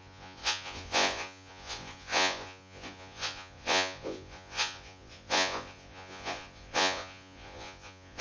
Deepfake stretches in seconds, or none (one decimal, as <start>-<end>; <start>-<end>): 0.0-8.2